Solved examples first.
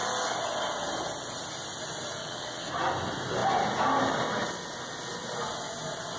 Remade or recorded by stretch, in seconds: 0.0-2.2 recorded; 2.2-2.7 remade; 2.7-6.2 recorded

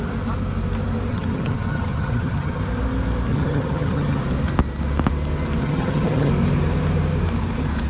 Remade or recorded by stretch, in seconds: 0.0-1.1 recorded; 1.1-2.6 remade; 2.6-3.3 recorded; 3.3-4.2 remade; 4.2-5.6 recorded; 5.6-6.3 remade; 6.3-7.9 recorded

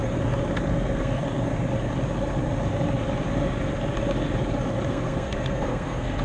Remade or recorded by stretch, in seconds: 0.0-0.7 recorded; 0.7-1.2 remade; 1.2-4.9 recorded; 4.9-6.2 remade